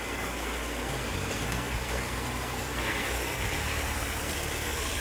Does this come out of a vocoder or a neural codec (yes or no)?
yes